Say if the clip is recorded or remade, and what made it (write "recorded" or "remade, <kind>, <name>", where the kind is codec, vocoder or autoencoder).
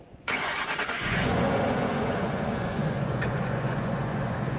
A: remade, vocoder, Vocos